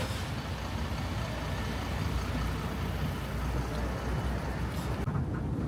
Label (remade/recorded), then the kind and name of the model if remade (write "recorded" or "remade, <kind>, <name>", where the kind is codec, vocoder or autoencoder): recorded